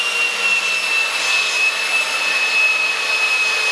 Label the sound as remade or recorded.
recorded